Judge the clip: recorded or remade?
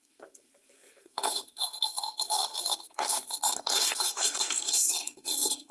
remade